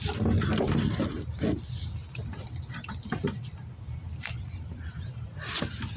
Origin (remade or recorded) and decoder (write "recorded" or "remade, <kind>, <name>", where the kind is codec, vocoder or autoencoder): recorded